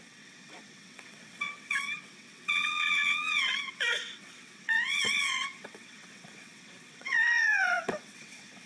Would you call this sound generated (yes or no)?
yes